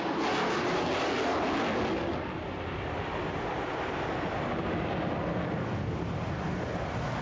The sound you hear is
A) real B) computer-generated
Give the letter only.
A